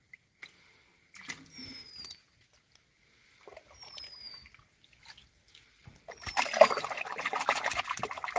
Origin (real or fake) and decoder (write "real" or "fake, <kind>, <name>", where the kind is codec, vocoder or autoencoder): real